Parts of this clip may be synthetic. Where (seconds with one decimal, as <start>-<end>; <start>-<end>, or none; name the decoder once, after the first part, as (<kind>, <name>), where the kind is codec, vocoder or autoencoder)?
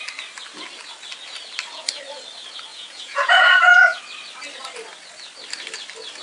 2.7-4.0 (vocoder, Vocos)